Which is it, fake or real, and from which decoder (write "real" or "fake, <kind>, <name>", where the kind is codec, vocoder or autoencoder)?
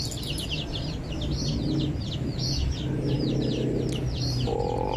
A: real